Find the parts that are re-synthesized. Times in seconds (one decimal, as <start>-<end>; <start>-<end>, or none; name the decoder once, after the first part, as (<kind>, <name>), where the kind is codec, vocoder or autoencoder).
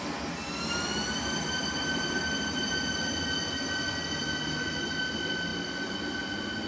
none